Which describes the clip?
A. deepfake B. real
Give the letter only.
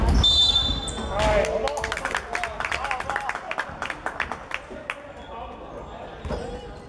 B